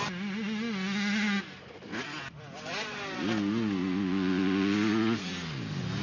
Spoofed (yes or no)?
no